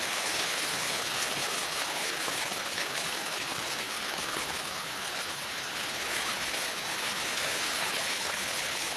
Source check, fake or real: fake